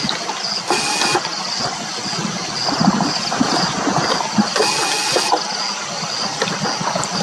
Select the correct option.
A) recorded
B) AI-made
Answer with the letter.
A